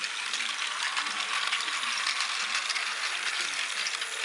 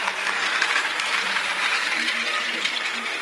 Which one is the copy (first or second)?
second